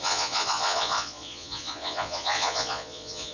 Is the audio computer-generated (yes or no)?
yes